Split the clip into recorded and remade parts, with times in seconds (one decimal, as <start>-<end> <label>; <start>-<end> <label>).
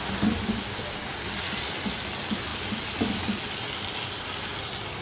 0.0-5.0 recorded